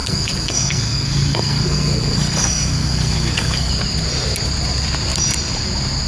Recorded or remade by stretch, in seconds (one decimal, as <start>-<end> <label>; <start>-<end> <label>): 0.0-3.7 remade; 3.7-6.1 recorded

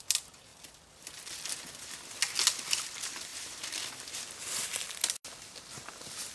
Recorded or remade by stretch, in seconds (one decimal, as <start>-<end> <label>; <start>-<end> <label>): 0.0-6.3 recorded